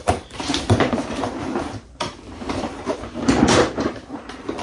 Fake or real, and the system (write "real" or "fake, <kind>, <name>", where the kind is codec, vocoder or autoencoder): fake, vocoder, BigVGAN v2